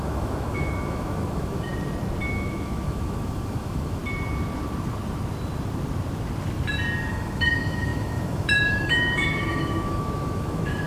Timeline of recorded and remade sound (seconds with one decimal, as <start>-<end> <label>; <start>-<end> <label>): 0.0-1.7 remade; 1.7-2.3 recorded; 2.3-4.0 remade; 4.0-7.1 recorded; 7.1-10.9 remade